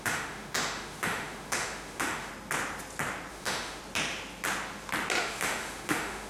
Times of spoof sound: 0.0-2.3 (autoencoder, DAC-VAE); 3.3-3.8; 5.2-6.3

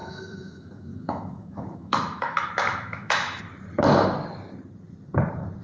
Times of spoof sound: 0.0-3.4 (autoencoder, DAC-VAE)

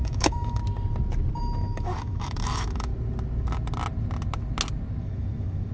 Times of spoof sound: 0.0-0.6 (autoencoder, DAC-VAE); 1.4-2.9; 5.0-5.7

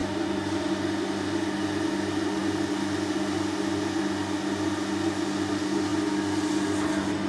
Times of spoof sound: none